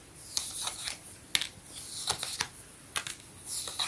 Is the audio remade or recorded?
recorded